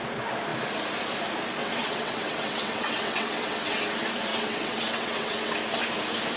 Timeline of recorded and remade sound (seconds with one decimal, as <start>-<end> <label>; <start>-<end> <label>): 0.0-1.6 recorded; 1.6-3.8 remade; 3.8-4.3 recorded; 4.3-5.5 remade; 5.5-6.4 recorded